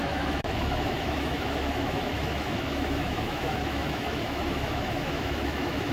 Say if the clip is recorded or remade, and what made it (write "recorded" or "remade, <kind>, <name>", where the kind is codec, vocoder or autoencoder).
remade, autoencoder, DAC-VAE